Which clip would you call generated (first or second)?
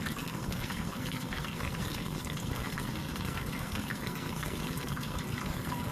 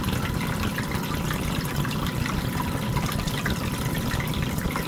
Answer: first